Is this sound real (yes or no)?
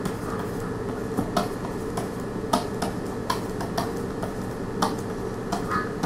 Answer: yes